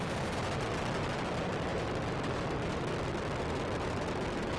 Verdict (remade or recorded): recorded